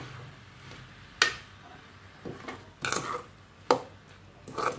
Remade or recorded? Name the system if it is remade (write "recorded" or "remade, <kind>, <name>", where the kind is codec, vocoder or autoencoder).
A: recorded